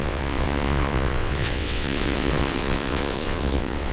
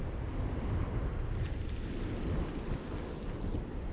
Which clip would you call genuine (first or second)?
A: second